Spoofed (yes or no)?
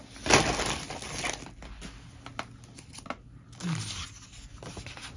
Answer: no